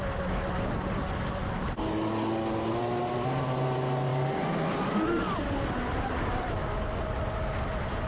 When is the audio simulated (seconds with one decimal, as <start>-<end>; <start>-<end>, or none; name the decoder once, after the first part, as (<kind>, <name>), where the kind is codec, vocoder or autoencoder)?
none